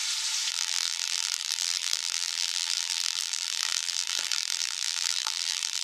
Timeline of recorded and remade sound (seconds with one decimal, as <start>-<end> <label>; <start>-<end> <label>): 0.0-0.5 recorded; 0.5-5.8 remade